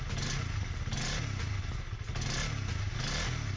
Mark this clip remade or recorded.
recorded